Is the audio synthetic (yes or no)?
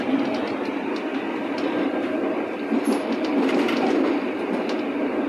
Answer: no